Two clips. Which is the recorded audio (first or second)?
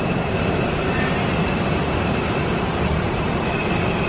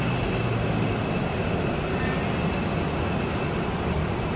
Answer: second